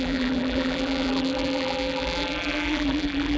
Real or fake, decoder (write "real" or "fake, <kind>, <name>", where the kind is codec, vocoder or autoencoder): fake, vocoder, BigVGAN v2